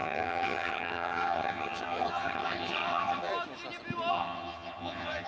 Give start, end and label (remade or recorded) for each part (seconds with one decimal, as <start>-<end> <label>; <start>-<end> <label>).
0.0-3.3 remade; 3.3-4.1 recorded; 4.1-5.3 remade

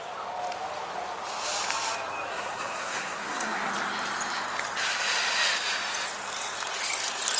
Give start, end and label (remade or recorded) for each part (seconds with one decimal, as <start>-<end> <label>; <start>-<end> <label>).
0.0-2.3 recorded; 2.3-3.7 remade; 3.7-7.4 recorded

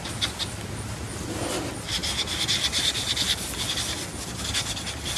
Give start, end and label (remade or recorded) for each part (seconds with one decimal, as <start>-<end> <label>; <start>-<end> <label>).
0.0-5.2 recorded

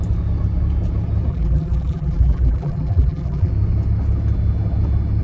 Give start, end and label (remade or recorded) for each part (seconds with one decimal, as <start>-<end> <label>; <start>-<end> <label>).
0.0-1.3 recorded; 1.3-3.5 remade; 3.5-5.2 recorded